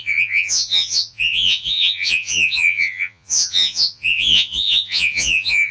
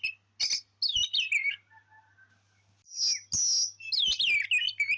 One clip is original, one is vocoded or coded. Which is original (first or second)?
second